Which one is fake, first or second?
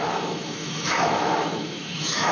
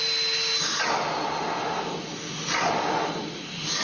first